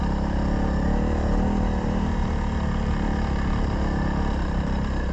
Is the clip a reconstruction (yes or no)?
no